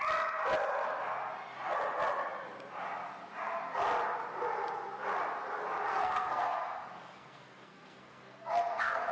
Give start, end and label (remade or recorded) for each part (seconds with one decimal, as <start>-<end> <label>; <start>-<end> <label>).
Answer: 0.0-5.9 recorded; 5.9-9.1 remade